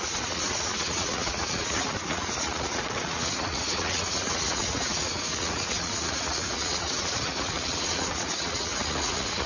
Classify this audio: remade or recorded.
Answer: remade